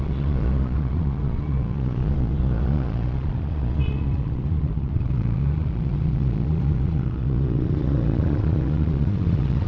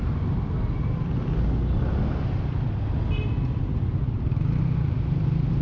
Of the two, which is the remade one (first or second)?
first